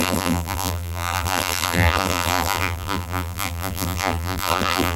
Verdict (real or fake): fake